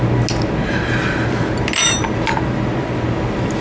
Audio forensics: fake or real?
real